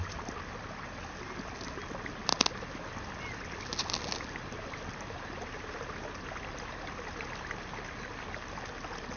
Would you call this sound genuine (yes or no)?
yes